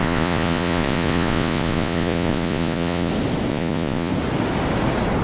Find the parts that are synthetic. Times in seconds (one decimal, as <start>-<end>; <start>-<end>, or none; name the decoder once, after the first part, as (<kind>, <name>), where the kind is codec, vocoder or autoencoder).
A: 0.0-3.1 (vocoder, Vocos); 3.5-4.1